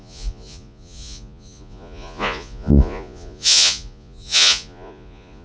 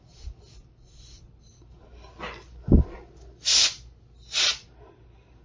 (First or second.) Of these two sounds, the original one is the second